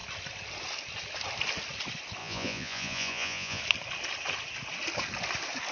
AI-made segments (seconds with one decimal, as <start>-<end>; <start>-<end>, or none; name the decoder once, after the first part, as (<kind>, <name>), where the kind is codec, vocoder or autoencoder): 2.2-3.6 (vocoder, Vocos)